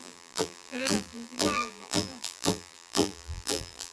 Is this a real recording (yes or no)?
no